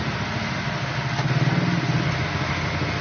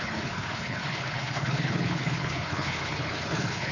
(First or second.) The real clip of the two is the first